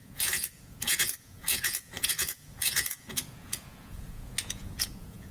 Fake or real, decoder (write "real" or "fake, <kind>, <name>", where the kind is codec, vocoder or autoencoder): fake, vocoder, Vocos